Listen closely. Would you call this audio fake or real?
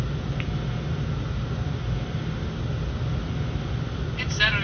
real